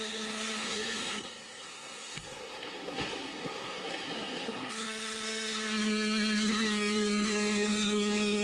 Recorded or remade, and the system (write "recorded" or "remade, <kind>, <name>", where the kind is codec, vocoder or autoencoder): remade, codec, SNAC